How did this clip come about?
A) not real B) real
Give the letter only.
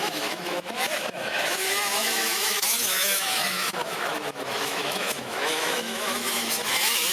A